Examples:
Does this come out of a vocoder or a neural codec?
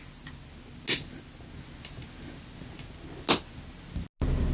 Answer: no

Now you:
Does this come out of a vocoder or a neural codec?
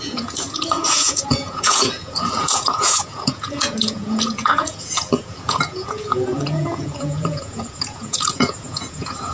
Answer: yes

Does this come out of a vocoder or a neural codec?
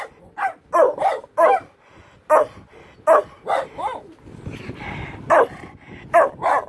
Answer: no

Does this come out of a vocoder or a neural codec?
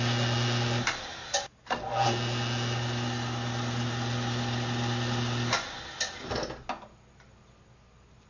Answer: no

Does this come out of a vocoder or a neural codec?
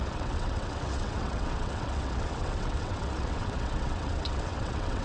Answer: yes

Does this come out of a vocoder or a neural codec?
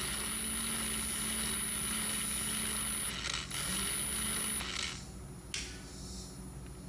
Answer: no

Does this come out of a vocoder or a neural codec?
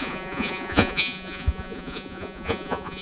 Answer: yes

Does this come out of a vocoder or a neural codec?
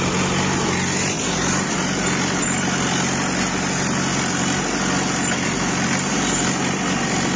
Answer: no